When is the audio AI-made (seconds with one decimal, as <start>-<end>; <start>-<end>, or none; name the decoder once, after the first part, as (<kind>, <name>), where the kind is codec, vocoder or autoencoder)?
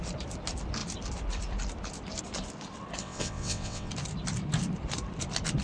3.0-3.9 (vocoder, WaveNeXt)